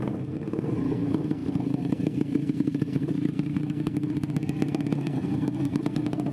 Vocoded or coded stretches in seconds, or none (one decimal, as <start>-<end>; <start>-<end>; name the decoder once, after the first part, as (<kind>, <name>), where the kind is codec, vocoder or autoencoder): 0.0-6.3 (codec, SNAC)